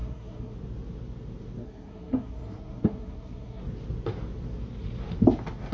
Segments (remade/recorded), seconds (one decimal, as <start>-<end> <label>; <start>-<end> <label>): 0.0-0.5 remade; 0.5-1.6 recorded; 1.6-3.6 remade; 3.6-5.7 recorded